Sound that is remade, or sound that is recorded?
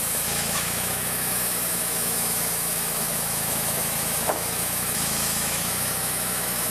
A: remade